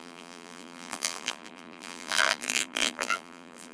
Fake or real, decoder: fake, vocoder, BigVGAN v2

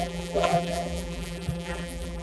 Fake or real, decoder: fake, vocoder, BigVGAN v2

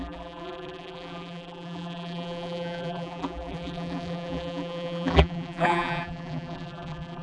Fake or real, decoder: fake, vocoder, BigVGAN v2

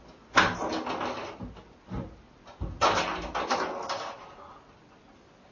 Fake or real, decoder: real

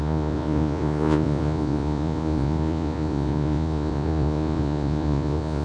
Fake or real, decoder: fake, vocoder, Vocos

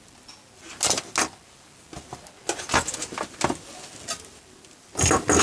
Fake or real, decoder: real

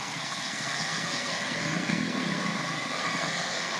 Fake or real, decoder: fake, codec, SNAC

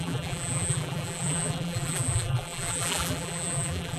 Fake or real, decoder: fake, vocoder, BigVGAN v2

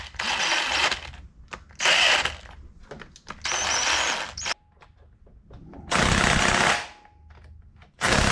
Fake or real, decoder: real